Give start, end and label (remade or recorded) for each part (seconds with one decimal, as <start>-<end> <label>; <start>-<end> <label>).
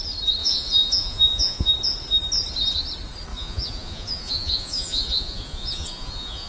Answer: 0.0-0.4 recorded; 0.4-1.7 remade; 1.7-3.3 recorded; 3.3-6.5 remade